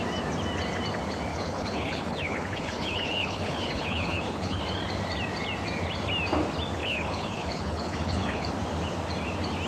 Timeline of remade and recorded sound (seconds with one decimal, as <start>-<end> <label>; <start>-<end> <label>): 0.0-1.3 recorded; 1.3-4.6 remade; 4.6-6.8 recorded; 6.8-8.5 remade; 8.5-9.7 recorded